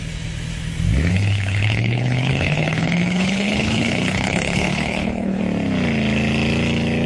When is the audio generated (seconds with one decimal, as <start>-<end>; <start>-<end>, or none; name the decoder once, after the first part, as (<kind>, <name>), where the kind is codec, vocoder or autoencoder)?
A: 1.1-5.4 (codec, HILCodec)